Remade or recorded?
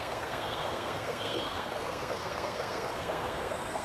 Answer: remade